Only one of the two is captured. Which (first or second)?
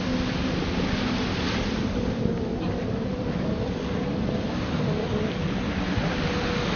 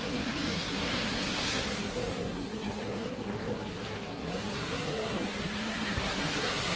first